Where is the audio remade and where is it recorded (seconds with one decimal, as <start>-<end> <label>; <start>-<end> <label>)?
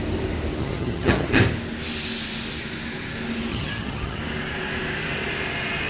0.0-0.6 recorded; 0.6-1.4 remade; 1.4-3.5 recorded; 3.5-4.2 remade; 4.2-5.9 recorded